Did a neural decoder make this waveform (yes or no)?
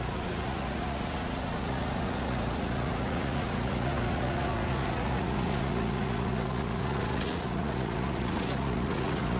yes